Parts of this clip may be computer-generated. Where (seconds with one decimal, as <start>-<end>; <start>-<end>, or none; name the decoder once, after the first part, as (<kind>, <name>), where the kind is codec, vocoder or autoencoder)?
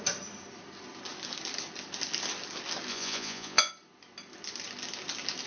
2.9-3.7 (vocoder, Vocos)